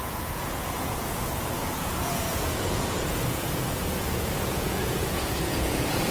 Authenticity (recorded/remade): remade